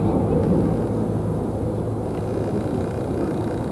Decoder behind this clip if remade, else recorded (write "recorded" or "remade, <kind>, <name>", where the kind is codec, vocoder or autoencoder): recorded